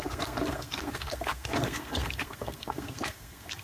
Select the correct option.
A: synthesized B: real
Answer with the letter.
A